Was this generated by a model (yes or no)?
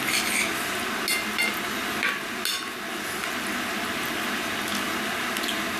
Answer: no